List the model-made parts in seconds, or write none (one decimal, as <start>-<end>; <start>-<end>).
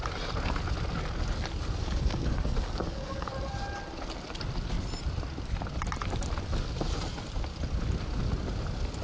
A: 1.8-3.3